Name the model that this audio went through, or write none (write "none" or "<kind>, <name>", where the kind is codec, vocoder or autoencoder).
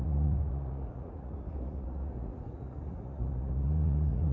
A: vocoder, Vocos